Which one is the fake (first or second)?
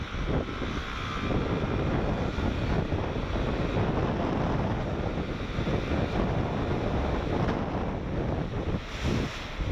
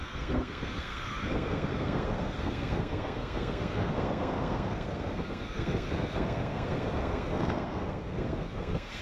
second